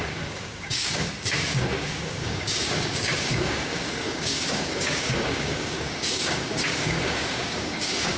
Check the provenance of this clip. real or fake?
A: fake